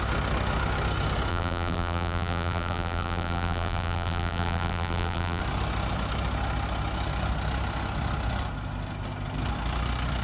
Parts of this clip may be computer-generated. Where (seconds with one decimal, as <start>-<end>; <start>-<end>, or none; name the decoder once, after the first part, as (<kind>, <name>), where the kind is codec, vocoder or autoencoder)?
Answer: 1.3-5.4 (vocoder, BigVGAN v2)